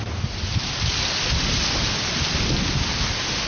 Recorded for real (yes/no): yes